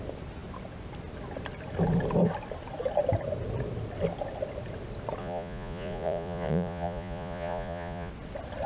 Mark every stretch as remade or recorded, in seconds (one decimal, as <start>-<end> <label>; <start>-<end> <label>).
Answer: 0.0-5.2 recorded; 5.2-8.1 remade; 8.1-8.7 recorded